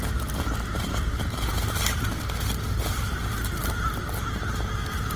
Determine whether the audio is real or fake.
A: real